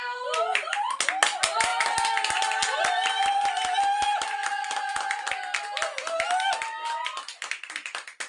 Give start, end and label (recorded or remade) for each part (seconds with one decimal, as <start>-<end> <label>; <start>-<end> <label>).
0.0-8.3 recorded